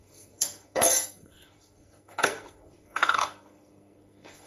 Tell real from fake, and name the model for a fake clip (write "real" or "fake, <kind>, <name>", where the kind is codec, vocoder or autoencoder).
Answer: fake, codec, SNAC